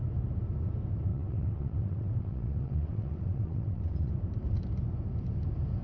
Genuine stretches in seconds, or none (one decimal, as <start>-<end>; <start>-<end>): 0.0-1.1; 4.1-5.8